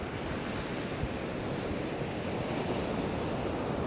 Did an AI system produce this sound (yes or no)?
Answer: no